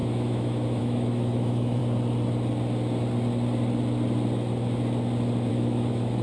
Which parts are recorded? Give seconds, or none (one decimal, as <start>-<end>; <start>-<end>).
1.8-5.5